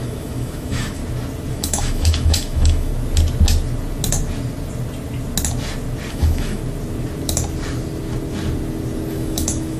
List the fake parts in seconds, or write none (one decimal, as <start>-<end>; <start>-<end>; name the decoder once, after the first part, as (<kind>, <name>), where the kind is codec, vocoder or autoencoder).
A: 0.0-1.0 (autoencoder, DAC-VAE); 1.5-2.9; 6.1-6.6; 9.1-9.8